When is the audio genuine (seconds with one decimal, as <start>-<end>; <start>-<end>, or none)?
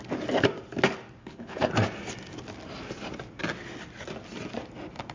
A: 0.0-1.2; 1.7-5.1